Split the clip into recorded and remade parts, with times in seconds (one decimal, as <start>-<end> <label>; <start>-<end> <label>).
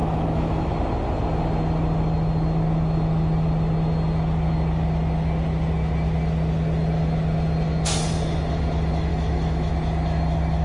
0.0-0.7 remade; 0.7-9.1 recorded; 9.1-9.7 remade; 9.7-10.6 recorded